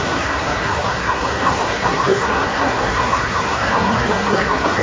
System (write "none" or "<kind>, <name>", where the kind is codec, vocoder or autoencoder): codec, SNAC